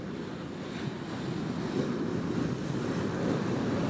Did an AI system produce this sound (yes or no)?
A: no